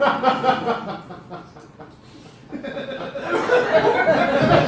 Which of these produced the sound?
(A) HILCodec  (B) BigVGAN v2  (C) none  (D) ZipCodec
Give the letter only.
C